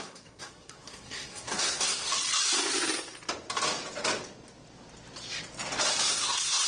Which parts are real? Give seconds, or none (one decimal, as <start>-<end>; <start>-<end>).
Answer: 2.1-6.1